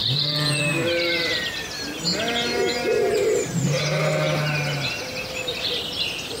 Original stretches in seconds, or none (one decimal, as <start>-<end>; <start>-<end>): 0.6-6.4